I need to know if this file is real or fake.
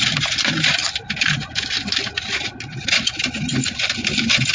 real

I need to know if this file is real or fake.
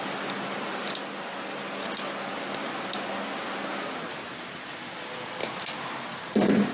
real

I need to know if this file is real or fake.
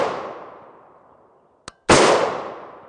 real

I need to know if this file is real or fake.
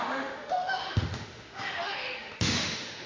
fake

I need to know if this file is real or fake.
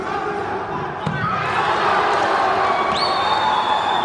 real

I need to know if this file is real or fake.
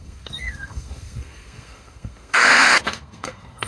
fake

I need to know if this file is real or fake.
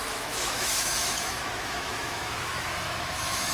fake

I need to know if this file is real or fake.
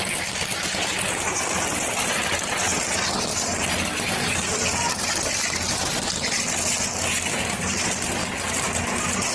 real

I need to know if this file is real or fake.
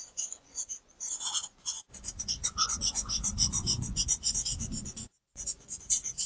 fake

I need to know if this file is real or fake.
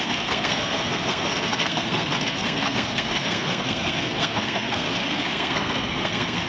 fake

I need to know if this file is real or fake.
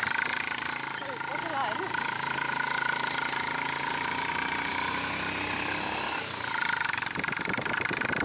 real